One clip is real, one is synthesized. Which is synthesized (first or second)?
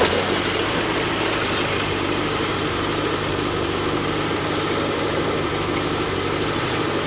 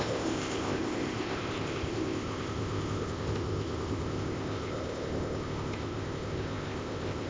second